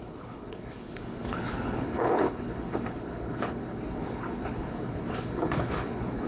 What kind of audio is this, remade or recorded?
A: remade